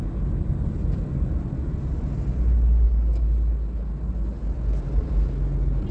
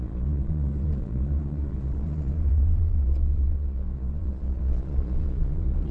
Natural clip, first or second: first